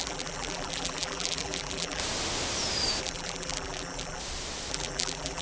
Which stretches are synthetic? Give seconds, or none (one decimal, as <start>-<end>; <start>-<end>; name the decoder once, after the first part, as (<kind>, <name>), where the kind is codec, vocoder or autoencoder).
0.0-2.0 (vocoder, BigVGAN v2); 3.0-4.2; 4.7-5.4